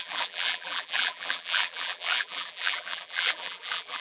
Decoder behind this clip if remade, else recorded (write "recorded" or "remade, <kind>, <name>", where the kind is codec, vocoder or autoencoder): remade, vocoder, BigVGAN v2